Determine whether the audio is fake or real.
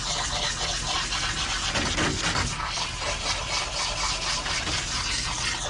real